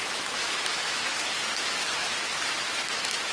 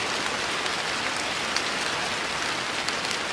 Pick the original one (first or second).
second